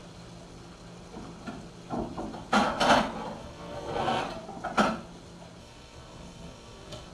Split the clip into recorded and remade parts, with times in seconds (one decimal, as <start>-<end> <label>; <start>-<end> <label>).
0.0-3.4 recorded; 3.4-4.2 remade; 4.2-5.6 recorded; 5.6-7.1 remade